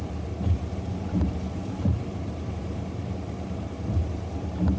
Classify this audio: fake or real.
fake